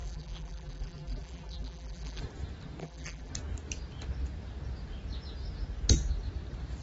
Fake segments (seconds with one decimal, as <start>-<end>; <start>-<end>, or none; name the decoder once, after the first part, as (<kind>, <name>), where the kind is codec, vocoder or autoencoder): 0.0-2.2 (vocoder, BigVGAN v2); 2.8-3.3